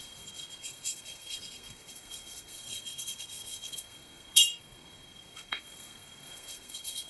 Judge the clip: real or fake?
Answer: fake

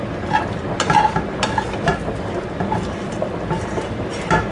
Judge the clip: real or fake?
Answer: real